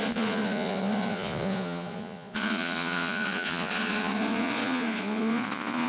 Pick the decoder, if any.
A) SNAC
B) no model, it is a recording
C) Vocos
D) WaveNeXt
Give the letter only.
C